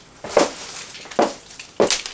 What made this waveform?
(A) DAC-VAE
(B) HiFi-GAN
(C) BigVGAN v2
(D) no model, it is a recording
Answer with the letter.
D